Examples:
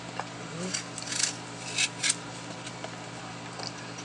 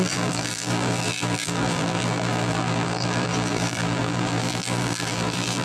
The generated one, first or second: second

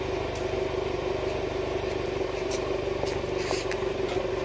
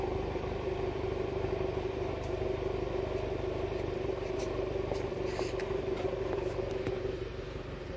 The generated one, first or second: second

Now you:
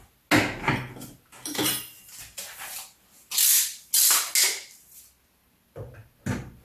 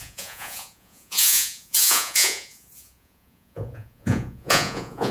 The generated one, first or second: second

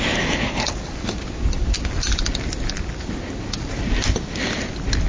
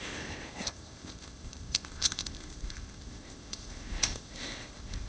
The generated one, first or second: second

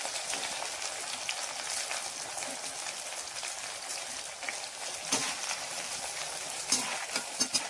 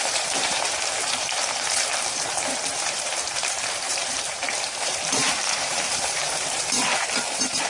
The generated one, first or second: second